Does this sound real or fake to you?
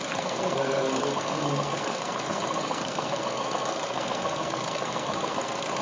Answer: fake